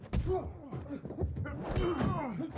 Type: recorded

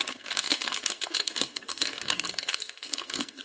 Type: remade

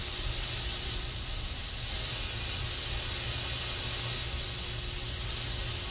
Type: recorded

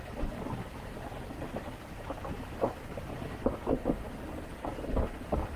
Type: remade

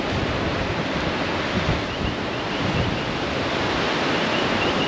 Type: recorded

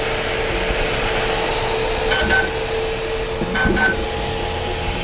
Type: recorded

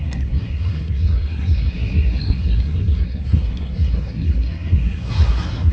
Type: remade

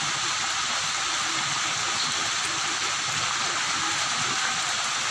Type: recorded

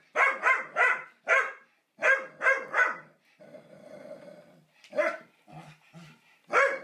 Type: recorded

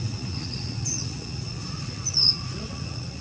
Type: remade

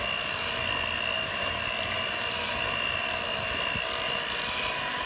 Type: recorded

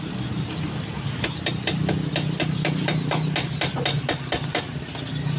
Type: recorded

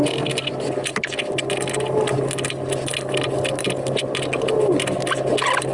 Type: recorded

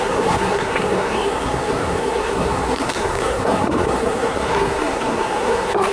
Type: remade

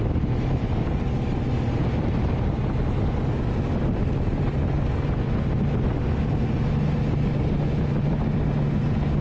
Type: recorded